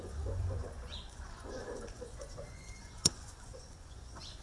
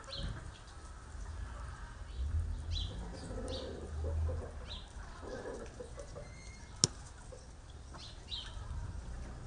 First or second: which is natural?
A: second